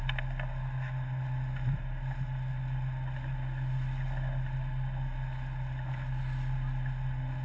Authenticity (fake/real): real